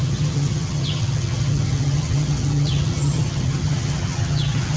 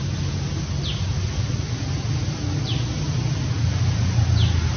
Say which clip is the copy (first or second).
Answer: first